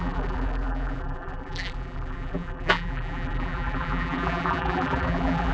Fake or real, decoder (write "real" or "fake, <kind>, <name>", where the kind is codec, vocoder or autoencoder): fake, vocoder, BigVGAN v2